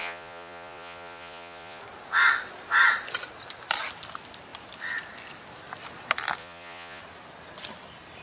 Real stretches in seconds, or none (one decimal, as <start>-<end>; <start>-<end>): 1.8-6.4; 7.0-8.2